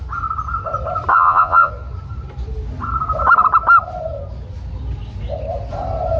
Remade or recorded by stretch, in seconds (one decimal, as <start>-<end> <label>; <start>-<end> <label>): 0.0-1.1 recorded; 1.1-1.7 remade; 1.7-6.2 recorded